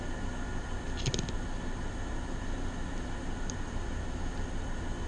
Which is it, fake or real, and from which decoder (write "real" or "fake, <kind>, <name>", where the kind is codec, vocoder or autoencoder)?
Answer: real